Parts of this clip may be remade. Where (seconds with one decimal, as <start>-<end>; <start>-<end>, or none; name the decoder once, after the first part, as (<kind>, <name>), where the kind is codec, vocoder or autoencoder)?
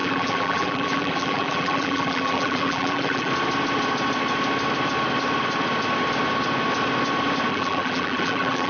0.0-3.3 (vocoder, BigVGAN v2); 7.5-8.7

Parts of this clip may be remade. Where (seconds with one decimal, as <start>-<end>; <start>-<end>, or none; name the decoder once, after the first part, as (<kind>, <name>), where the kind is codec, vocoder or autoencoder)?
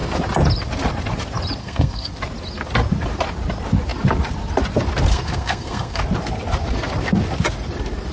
1.6-2.2 (codec, SNAC); 5.1-6.0